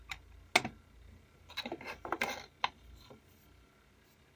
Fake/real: real